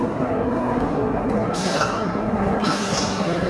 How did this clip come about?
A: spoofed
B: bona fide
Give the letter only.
A